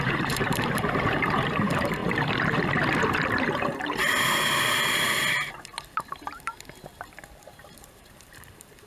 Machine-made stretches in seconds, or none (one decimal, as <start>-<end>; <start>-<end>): 0.0-2.0; 7.1-8.9